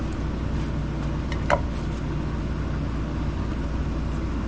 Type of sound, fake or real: real